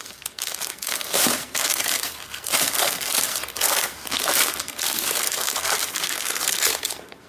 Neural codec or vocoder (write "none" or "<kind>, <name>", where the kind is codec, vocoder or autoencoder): codec, SNAC